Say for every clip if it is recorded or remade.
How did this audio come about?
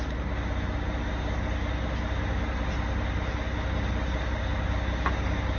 recorded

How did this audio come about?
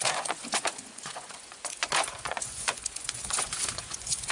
remade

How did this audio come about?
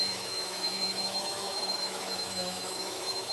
remade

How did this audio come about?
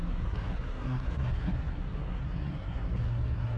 remade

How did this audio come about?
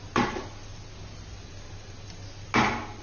recorded